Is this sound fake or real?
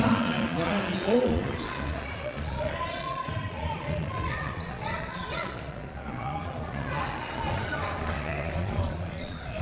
fake